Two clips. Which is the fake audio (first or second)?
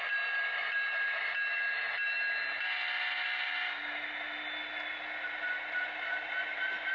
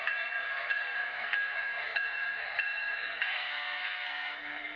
second